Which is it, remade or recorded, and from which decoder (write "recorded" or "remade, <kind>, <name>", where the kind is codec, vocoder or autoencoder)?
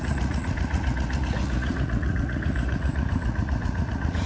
remade, vocoder, Vocos